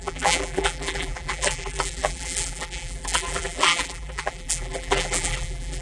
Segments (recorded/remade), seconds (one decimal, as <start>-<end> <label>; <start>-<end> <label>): 0.0-5.8 remade

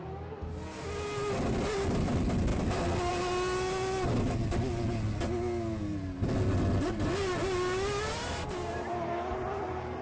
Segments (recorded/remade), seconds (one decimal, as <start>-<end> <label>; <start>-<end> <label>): 0.0-10.0 recorded

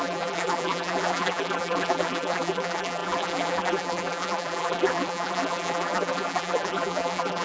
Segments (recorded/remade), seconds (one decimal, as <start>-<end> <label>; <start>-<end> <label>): 0.0-7.4 remade

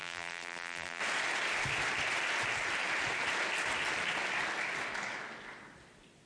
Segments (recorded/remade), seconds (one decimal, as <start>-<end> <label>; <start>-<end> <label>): 0.0-1.0 remade; 1.0-6.3 recorded